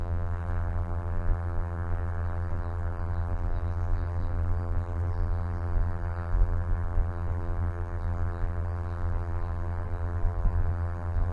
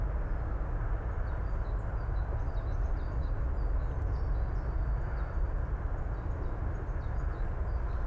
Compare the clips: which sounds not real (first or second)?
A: first